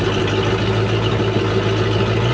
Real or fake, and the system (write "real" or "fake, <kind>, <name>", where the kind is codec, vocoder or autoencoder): real